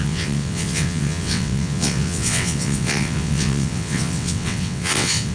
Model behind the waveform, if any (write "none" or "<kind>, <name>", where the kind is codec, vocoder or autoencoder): vocoder, WaveNeXt